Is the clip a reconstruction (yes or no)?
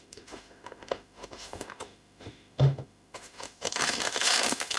yes